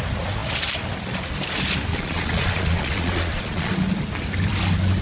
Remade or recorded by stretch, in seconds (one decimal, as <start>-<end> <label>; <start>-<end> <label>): 0.0-1.9 recorded; 1.9-3.7 remade; 3.7-5.0 recorded